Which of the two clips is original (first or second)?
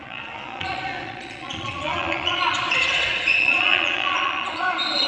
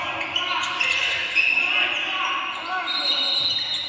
second